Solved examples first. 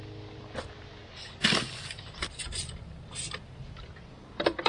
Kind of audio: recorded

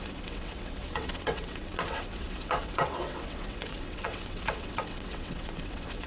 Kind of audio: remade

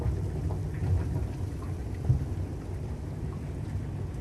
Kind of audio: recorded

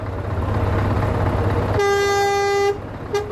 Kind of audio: recorded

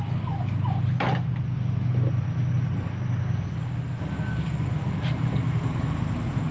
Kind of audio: recorded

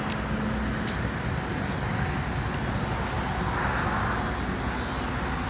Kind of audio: recorded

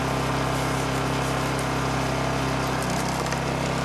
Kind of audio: recorded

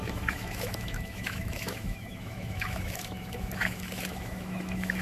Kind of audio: remade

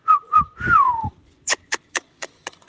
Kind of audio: remade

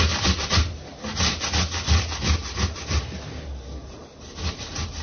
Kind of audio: recorded